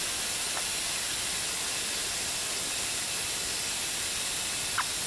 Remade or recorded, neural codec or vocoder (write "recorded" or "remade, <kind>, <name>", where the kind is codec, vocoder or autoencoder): recorded